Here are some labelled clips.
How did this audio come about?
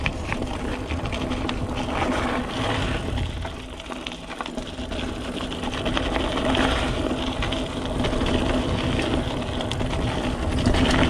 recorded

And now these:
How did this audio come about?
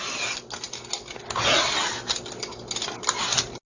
recorded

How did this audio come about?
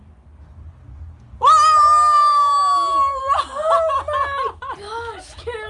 recorded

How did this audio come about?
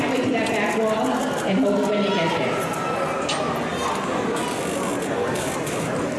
recorded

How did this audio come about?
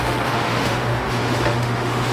remade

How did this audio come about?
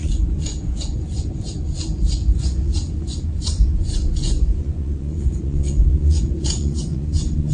remade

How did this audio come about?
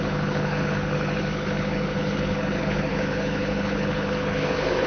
remade